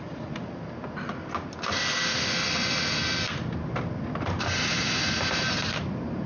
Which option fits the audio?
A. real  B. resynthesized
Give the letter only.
A